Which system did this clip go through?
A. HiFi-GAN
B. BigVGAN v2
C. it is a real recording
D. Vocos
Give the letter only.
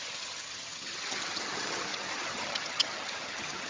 A